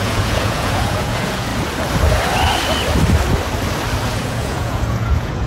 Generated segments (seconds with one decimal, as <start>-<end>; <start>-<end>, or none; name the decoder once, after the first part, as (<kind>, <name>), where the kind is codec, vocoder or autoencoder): 0.0-1.5 (vocoder, Vocos); 4.1-5.5

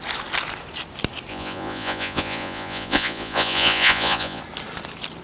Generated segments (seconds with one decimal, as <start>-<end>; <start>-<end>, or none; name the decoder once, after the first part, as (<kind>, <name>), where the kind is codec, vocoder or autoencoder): 1.3-4.4 (vocoder, Vocos)

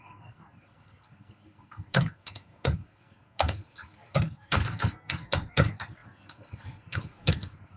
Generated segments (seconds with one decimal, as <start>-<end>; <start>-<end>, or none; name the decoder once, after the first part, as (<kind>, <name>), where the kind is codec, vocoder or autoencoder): 0.0-7.8 (codec, SNAC)

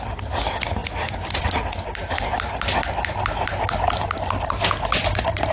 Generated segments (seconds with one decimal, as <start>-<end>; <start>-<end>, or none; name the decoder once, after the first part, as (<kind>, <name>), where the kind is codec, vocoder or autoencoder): none

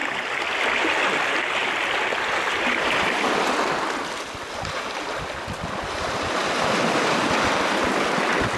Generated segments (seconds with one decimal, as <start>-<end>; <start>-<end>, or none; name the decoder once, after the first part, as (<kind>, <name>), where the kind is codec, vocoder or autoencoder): none